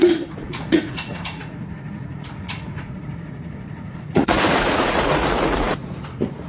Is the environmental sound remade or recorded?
remade